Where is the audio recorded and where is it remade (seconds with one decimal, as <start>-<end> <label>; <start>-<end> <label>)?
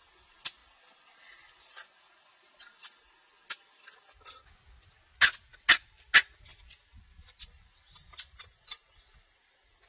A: 0.0-9.9 recorded